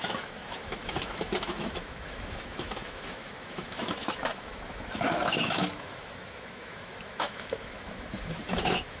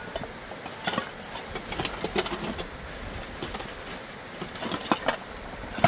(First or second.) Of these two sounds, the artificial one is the first